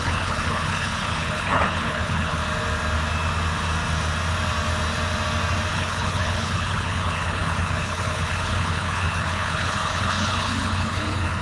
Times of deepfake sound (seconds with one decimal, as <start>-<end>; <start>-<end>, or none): 0.0-2.4; 5.7-11.4

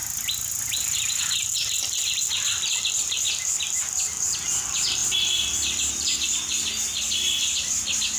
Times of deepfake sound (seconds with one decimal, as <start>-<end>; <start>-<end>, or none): none